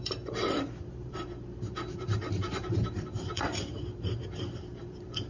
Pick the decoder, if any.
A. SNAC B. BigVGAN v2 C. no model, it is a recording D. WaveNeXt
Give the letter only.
B